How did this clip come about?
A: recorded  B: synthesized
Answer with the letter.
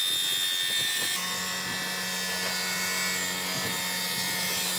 A